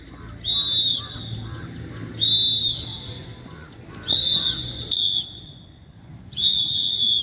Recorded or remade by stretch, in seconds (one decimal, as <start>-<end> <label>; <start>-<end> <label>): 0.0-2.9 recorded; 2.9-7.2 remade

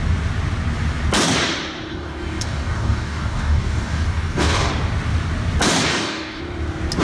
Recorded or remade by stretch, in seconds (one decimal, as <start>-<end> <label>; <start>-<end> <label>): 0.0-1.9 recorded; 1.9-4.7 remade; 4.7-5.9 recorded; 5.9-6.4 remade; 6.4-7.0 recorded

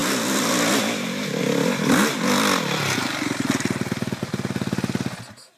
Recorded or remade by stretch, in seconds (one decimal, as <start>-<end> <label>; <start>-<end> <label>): 0.0-5.6 recorded